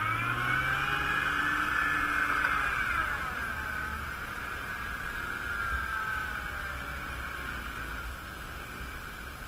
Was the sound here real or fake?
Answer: real